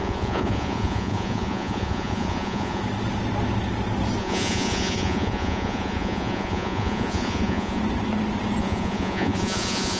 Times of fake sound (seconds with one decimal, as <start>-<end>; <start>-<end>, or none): 0.0-2.8; 4.2-7.8; 8.6-10.0